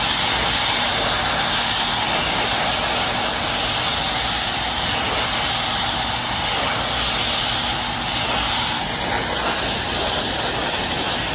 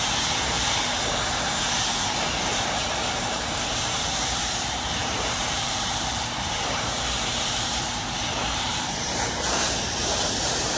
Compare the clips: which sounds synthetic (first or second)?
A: second